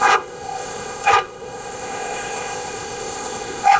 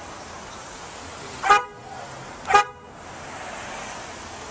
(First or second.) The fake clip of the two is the first